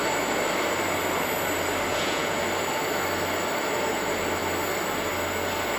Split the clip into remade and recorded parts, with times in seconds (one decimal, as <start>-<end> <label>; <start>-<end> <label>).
0.0-1.9 recorded; 1.9-2.4 remade; 2.4-5.8 recorded